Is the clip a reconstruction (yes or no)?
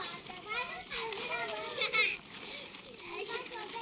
yes